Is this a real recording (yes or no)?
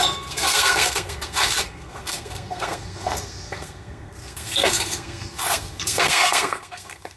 no